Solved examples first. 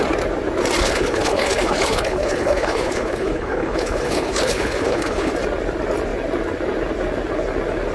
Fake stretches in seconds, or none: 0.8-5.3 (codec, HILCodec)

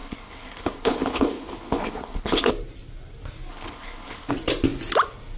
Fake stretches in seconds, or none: 0.0-2.5 (codec, HILCodec); 3.5-4.3

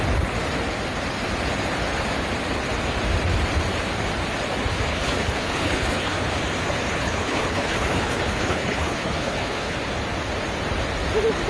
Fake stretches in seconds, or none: 4.7-6.3 (codec, HILCodec); 6.9-9.8